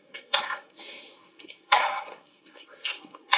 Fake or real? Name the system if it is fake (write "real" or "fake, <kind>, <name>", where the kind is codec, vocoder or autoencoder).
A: fake, codec, SNAC